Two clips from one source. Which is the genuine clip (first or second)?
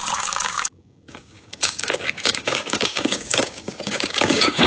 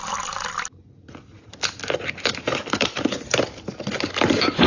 second